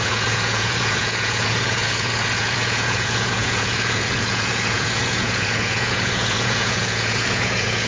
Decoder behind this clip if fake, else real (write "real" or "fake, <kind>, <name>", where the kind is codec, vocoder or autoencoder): fake, vocoder, Vocos